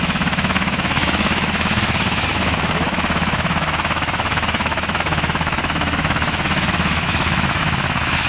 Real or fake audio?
fake